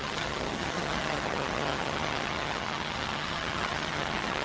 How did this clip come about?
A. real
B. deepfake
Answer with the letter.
B